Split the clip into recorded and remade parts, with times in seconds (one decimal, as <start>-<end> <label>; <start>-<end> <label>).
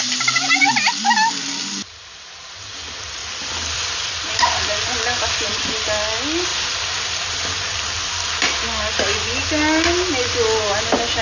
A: 0.0-3.2 recorded; 3.2-4.3 remade; 4.3-11.2 recorded